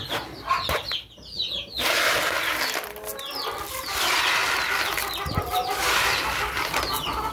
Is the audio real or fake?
real